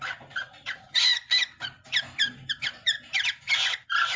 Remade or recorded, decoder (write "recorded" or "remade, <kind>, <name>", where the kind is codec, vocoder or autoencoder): recorded